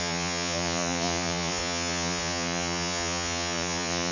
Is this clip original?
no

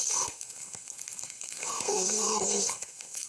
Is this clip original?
no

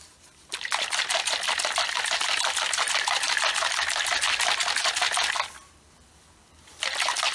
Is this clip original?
no